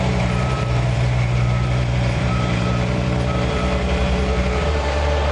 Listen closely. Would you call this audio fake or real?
fake